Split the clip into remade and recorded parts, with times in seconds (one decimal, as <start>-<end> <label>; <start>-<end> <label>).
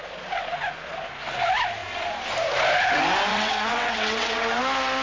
0.0-3.3 recorded; 3.3-4.6 remade; 4.6-5.0 recorded